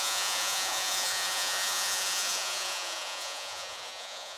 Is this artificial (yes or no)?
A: yes